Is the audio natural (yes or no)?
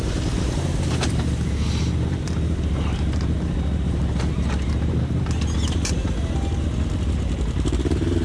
no